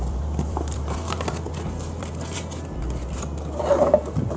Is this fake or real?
fake